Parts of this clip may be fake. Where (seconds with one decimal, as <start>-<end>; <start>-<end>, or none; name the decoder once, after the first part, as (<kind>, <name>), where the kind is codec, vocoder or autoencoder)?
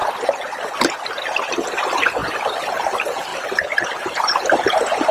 3.3-5.1 (vocoder, BigVGAN v2)